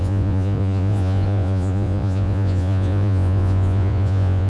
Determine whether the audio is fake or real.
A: fake